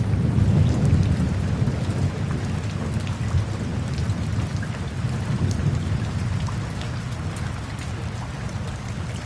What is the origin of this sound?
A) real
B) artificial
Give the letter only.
A